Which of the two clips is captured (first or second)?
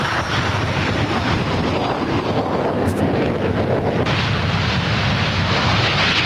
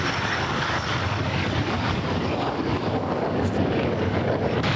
first